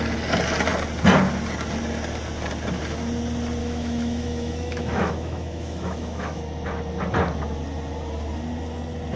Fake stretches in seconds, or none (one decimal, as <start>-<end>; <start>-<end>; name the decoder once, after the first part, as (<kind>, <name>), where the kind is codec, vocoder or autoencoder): 3.6-6.4 (autoencoder, DAC-VAE)